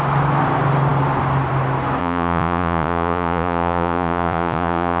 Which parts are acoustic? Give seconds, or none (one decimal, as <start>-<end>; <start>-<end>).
0.0-2.0